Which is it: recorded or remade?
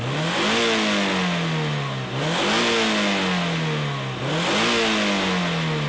recorded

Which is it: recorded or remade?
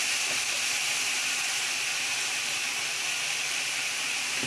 recorded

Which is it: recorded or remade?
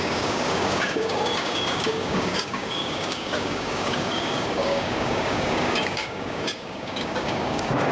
remade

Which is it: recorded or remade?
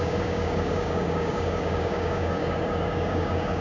remade